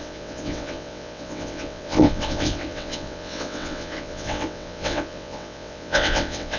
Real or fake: fake